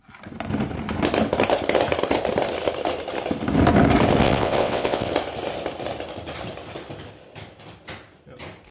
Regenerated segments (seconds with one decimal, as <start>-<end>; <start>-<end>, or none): 4.2-5.1